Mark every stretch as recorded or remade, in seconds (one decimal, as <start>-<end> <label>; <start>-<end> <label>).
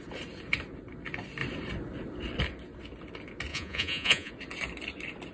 0.0-3.5 recorded; 3.5-4.3 remade; 4.3-5.3 recorded